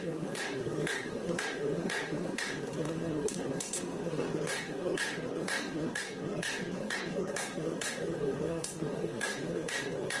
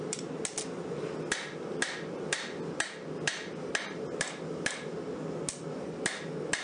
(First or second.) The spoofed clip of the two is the first